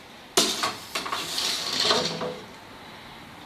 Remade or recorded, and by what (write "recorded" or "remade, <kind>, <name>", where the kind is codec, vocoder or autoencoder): recorded